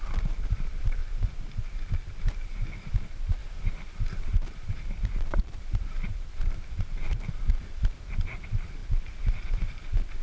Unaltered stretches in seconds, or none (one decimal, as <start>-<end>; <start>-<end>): 1.0-2.9; 3.4-4.3

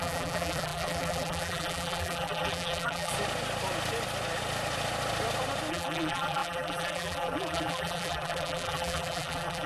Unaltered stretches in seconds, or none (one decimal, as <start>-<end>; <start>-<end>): 3.1-5.7